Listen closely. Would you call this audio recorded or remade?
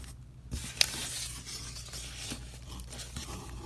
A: recorded